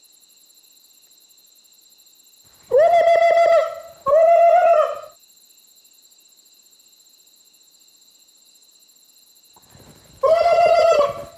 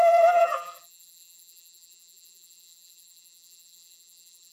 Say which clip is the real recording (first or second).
first